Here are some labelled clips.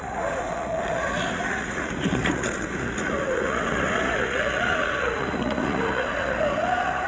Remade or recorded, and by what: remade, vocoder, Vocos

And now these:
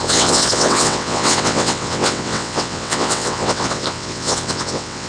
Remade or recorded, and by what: remade, vocoder, WaveNeXt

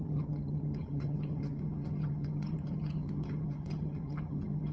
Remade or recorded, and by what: remade, vocoder, HiFi-GAN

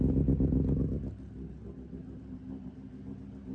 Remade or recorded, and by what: recorded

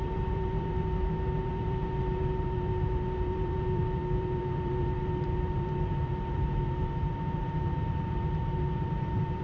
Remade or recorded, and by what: remade, vocoder, BigVGAN v2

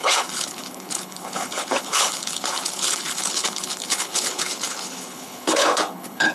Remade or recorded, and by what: remade, codec, HILCodec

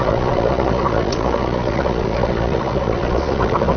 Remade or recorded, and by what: remade, vocoder, Vocos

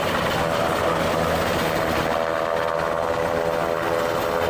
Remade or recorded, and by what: recorded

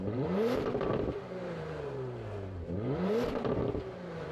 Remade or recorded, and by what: remade, vocoder, BigVGAN v2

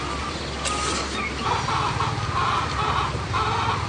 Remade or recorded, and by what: recorded